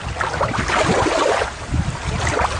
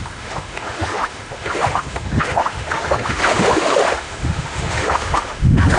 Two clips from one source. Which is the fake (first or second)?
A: second